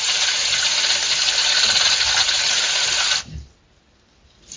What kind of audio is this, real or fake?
real